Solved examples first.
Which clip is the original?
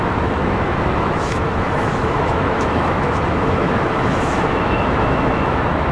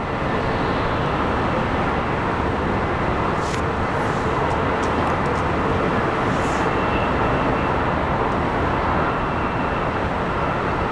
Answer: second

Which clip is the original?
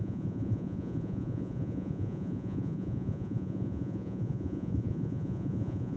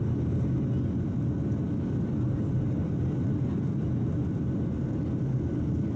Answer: second